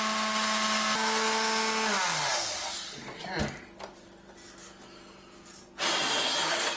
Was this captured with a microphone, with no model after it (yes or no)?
yes